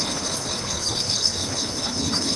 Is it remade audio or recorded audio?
remade